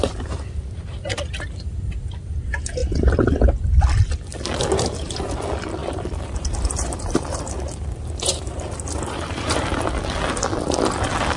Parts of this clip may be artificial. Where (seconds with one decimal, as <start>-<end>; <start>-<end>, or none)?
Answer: 5.8-9.7